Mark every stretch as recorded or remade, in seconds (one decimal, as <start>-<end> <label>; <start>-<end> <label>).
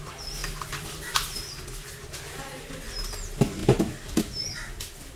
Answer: 0.0-5.2 recorded